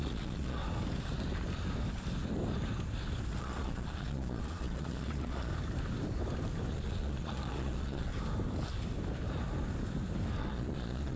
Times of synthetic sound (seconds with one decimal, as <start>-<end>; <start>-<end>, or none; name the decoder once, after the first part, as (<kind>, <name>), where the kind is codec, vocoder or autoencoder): 0.0-0.6 (vocoder, Vocos); 3.4-5.5; 6.7-8.1; 10.4-11.2